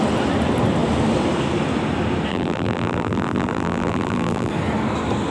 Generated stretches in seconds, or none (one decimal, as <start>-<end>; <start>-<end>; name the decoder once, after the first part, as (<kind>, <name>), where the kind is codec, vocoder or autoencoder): 2.3-4.5 (vocoder, BigVGAN v2)